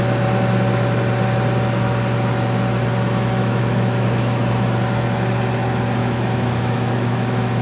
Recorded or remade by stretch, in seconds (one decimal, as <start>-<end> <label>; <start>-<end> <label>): 0.0-3.4 recorded; 3.4-4.5 remade; 4.5-6.0 recorded; 6.0-7.6 remade